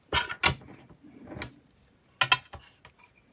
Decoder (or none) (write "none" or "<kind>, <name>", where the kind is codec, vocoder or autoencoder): none